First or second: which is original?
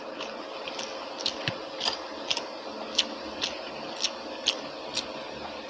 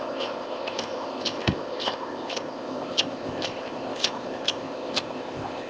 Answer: first